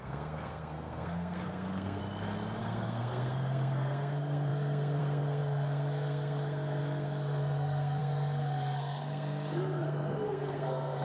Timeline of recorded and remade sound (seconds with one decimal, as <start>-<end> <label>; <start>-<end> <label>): 0.0-2.0 remade; 2.0-2.6 recorded; 2.6-11.0 remade